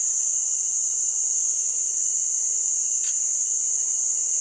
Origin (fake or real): real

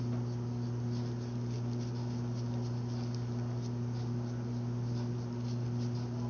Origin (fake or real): real